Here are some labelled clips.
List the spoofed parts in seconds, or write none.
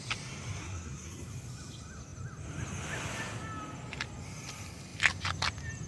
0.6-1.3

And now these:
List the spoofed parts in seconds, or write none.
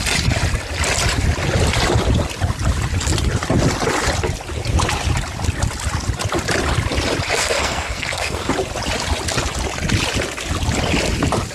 7.4-8.5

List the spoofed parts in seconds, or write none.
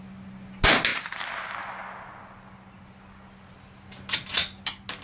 none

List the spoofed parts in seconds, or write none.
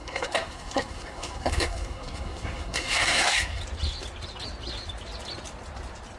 0.0-3.6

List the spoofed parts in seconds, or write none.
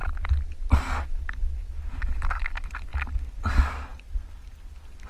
none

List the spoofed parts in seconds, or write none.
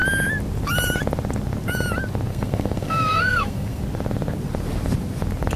2.3-3.8